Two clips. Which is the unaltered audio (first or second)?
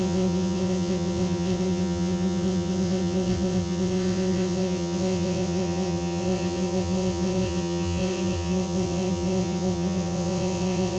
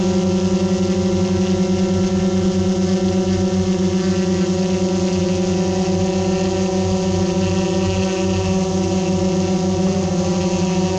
second